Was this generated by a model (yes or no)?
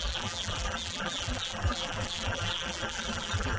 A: yes